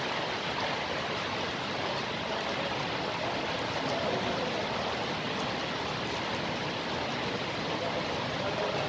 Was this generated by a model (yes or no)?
no